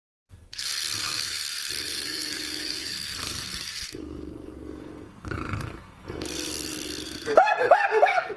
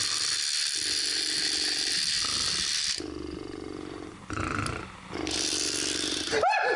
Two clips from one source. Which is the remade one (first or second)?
first